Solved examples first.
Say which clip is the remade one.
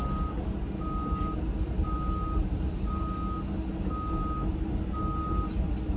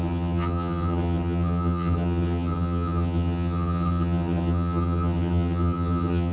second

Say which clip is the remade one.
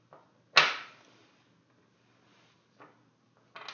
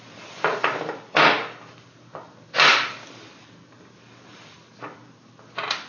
second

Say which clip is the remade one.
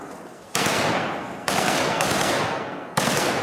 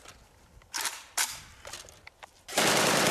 first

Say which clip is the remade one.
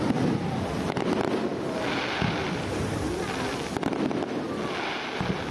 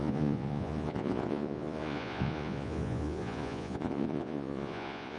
second